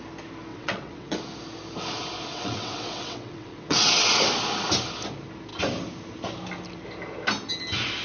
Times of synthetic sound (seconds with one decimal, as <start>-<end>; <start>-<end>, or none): 0.5-1.2; 2.3-4.1